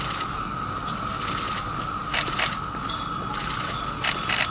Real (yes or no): yes